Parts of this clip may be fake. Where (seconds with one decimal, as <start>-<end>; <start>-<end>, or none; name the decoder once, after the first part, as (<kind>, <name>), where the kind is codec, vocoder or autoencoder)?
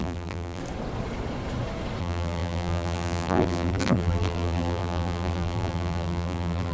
0.0-0.6 (vocoder, BigVGAN v2); 2.0-6.7